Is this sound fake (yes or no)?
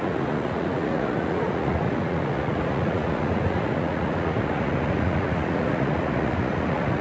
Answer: yes